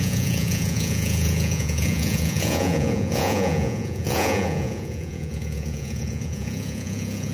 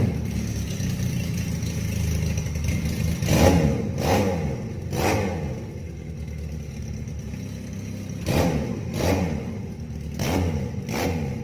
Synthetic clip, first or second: first